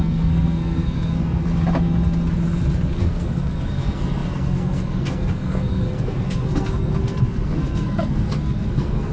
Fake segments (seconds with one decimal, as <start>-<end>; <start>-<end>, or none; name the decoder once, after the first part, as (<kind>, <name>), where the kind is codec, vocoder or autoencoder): 0.0-1.5 (codec, SNAC); 3.0-9.1